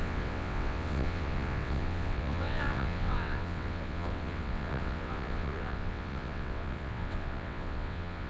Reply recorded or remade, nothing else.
remade